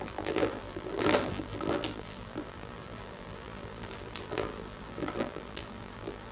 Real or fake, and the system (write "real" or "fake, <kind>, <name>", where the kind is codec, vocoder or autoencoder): fake, vocoder, BigVGAN v2